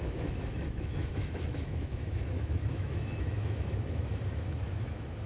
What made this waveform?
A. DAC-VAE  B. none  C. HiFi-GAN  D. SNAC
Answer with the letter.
A